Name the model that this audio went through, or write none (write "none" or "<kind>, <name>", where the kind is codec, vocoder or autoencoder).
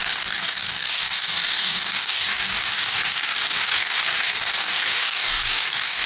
codec, DAC